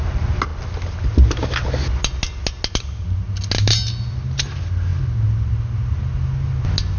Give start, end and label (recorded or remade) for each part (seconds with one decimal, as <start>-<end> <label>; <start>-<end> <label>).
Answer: 0.0-7.0 recorded